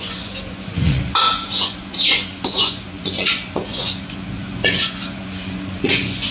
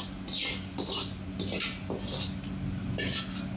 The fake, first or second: first